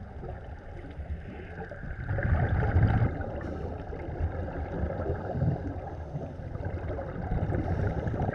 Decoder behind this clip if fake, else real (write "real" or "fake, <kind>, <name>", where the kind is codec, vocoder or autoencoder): fake, vocoder, BigVGAN v2